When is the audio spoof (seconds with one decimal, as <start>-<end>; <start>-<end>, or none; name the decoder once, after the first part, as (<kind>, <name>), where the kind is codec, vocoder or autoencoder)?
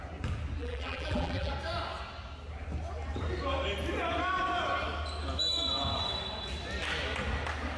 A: 0.6-1.5 (vocoder, BigVGAN v2)